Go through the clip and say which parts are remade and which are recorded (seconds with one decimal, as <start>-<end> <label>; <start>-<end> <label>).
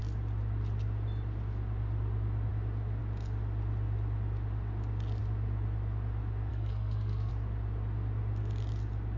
0.0-6.5 recorded; 6.5-7.3 remade; 7.3-9.2 recorded